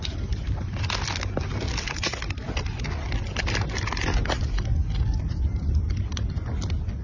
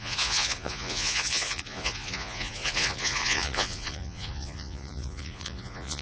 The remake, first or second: second